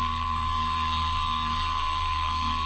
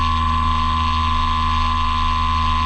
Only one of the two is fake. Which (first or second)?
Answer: first